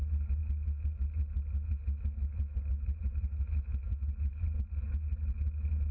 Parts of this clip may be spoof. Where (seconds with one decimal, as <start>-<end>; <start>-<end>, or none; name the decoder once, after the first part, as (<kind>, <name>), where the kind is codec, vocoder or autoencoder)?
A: none